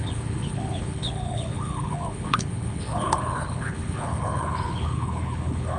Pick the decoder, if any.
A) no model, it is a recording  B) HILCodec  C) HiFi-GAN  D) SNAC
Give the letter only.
B